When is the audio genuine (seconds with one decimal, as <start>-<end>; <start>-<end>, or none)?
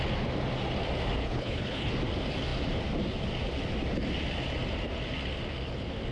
0.0-1.2; 1.9-6.1